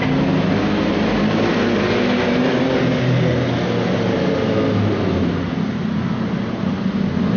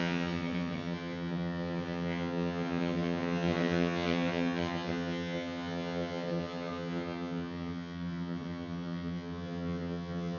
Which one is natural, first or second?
first